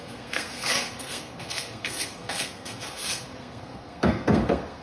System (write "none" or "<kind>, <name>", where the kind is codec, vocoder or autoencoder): codec, SNAC